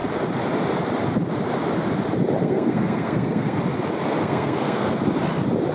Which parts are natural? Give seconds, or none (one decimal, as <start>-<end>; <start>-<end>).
0.0-2.4; 3.6-4.2; 4.9-5.7